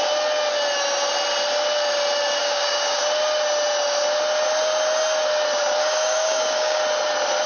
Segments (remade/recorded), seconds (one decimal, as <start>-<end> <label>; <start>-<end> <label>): 0.0-2.4 recorded; 2.4-3.0 remade; 3.0-5.8 recorded; 5.8-6.8 remade; 6.8-7.5 recorded